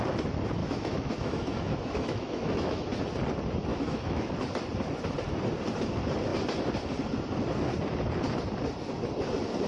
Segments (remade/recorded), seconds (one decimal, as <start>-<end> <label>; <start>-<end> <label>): 0.0-0.6 recorded; 0.6-2.9 remade; 2.9-3.7 recorded; 3.7-4.3 remade; 4.3-9.7 recorded